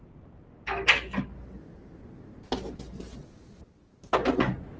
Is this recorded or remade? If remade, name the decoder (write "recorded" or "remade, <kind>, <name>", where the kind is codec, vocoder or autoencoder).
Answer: recorded